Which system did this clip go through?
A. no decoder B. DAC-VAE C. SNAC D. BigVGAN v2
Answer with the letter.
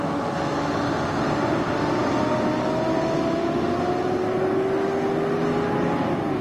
A